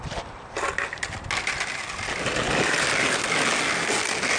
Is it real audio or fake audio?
real